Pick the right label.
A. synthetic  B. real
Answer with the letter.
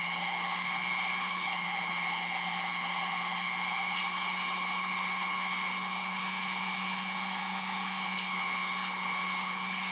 A